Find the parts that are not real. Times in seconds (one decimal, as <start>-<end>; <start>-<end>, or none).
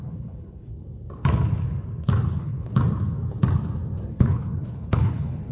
0.0-0.7; 2.3-2.7; 4.1-5.5